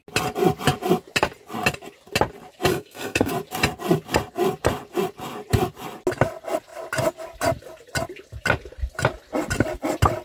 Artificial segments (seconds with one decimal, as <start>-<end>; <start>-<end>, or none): 2.7-3.3

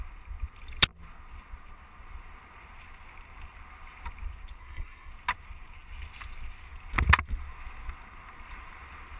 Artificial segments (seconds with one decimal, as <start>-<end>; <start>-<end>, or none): 4.6-5.1

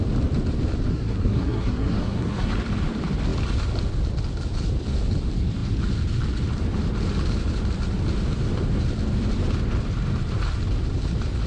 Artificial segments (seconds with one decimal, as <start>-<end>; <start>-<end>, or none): 0.9-2.5

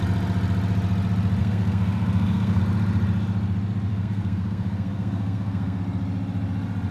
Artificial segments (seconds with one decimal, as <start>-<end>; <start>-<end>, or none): 1.4-2.6; 3.9-5.8